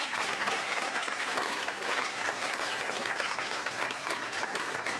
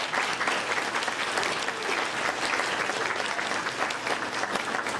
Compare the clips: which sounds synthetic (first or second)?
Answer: first